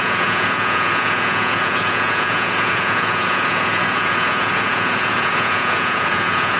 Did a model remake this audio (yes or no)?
yes